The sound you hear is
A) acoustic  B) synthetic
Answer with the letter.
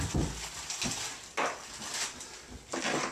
A